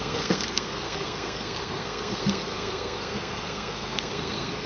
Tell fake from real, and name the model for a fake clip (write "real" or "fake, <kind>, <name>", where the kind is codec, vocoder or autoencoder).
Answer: fake, codec, SNAC